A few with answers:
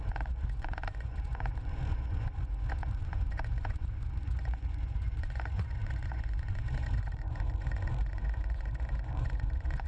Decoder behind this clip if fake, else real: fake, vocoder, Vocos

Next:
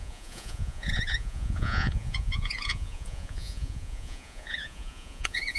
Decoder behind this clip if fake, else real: fake, vocoder, Vocos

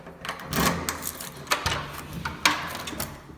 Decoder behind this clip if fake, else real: real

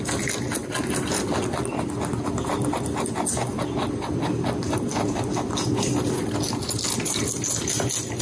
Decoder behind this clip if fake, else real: real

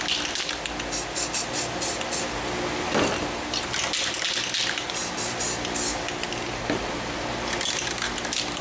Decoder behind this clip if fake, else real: real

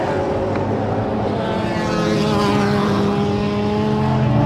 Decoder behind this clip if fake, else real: real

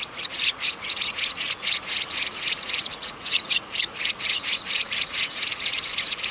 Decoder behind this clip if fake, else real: fake, vocoder, Vocos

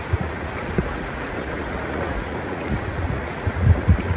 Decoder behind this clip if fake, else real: fake, vocoder, Vocos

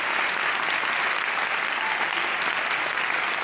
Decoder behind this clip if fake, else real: real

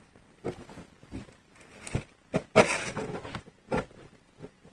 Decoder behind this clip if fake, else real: real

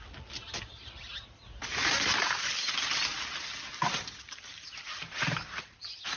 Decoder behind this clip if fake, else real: real